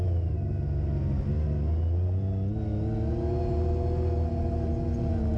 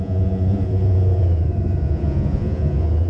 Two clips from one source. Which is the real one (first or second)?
first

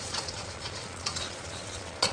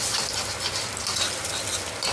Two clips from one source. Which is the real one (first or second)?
second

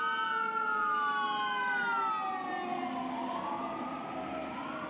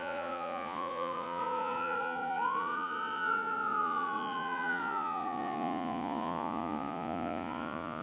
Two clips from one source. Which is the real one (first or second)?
first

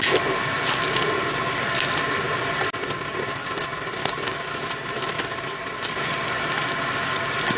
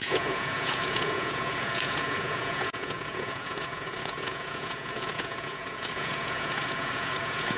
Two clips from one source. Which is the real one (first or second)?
first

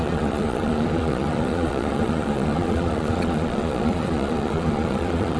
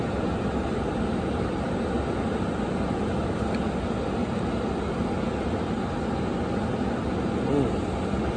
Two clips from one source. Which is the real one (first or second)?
second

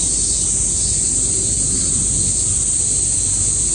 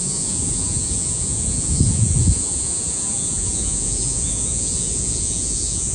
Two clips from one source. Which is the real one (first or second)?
first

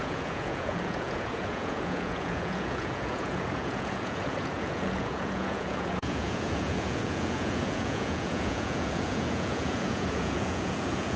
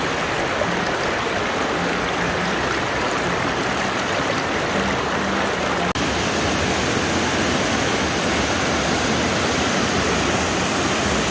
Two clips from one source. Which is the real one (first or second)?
second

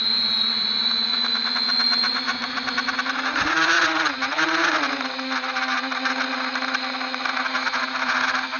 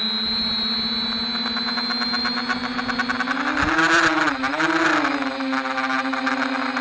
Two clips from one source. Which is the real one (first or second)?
second